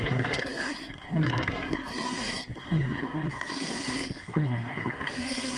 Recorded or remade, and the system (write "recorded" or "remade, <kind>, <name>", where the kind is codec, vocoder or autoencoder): remade, codec, SNAC